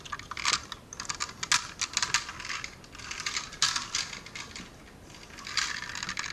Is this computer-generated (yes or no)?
no